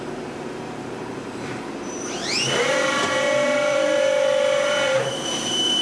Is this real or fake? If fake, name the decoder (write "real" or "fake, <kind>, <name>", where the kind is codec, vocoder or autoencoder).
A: fake, vocoder, BigVGAN v2